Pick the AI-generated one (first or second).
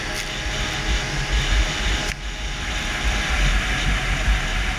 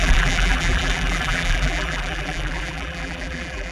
second